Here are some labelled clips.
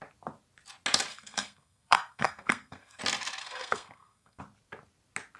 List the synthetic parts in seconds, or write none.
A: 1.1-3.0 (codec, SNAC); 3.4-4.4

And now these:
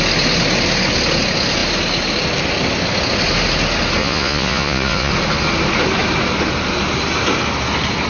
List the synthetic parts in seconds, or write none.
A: 4.0-5.1 (vocoder, Vocos)